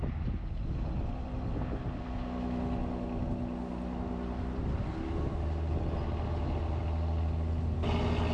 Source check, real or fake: real